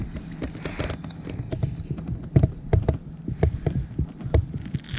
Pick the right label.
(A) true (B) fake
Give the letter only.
A